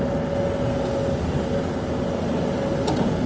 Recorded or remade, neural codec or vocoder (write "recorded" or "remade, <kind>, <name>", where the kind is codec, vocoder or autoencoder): recorded